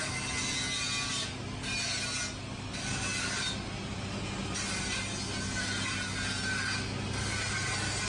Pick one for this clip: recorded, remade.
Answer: recorded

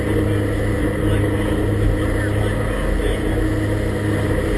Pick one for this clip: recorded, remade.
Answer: recorded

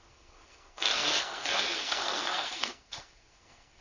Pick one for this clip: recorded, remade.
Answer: remade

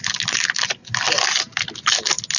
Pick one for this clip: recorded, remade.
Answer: recorded